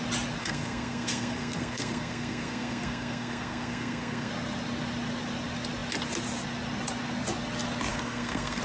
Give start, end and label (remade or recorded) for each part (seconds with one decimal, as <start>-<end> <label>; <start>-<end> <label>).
0.0-0.4 recorded; 0.4-4.3 remade; 4.3-7.9 recorded; 7.9-8.6 remade